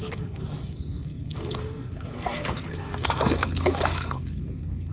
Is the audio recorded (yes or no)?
no